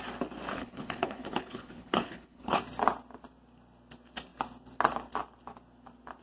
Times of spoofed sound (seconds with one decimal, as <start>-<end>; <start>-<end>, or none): 0.5-2.6